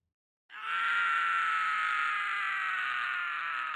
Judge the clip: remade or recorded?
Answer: recorded